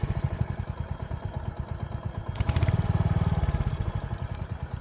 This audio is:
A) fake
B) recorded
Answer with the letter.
B